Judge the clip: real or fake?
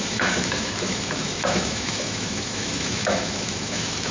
fake